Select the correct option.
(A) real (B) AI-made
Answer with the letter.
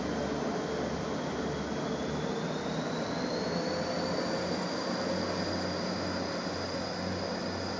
A